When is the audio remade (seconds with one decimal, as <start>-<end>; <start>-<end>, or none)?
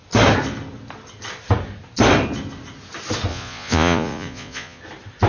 3.3-4.8